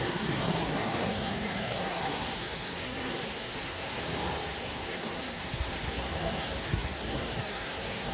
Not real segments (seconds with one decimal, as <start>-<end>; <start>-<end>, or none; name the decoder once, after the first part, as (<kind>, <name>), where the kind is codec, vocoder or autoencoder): 0.0-4.0 (codec, SNAC); 4.6-8.1